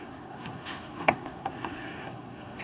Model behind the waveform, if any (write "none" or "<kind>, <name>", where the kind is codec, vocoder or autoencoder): codec, SNAC